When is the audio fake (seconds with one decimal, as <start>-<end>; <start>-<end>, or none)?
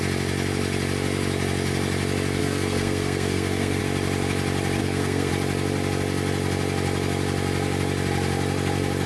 2.4-3.8; 4.8-5.3